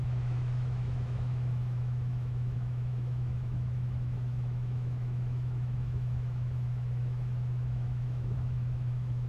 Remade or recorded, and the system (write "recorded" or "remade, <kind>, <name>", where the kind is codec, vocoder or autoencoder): remade, autoencoder, DAC-VAE